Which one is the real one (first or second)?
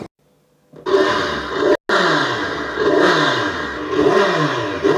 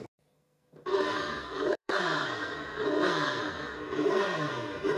first